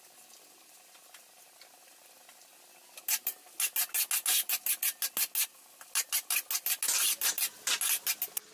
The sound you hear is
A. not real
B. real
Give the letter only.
B